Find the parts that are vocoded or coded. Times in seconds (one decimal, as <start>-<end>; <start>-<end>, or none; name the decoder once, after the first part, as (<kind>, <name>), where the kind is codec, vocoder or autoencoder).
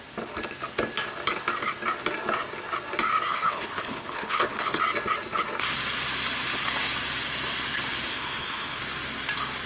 3.3-4.8 (codec, HILCodec); 8.1-8.8